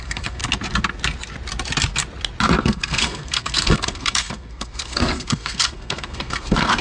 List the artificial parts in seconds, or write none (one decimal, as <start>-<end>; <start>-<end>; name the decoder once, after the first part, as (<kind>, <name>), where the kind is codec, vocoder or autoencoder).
0.0-0.4 (codec, SNAC); 2.6-6.8

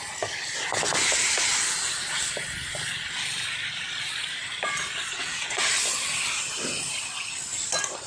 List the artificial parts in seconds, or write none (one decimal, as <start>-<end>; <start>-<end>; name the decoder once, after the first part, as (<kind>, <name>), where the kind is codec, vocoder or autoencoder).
5.1-5.7 (vocoder, WaveNeXt)

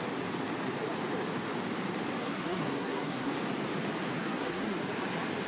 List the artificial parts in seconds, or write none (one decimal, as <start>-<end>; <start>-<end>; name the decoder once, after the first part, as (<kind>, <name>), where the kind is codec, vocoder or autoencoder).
2.2-3.3 (codec, SNAC); 4.1-4.8

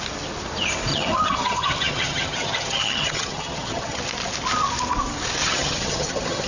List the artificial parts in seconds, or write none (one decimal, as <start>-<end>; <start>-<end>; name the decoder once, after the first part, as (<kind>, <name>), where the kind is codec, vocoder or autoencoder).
0.9-4.0 (vocoder, HiFi-GAN); 5.4-6.5

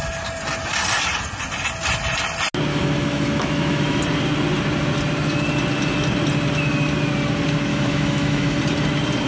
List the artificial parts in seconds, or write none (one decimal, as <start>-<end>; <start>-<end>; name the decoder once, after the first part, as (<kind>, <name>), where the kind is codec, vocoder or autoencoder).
2.7-4.0 (autoencoder, DAC-VAE); 7.7-8.6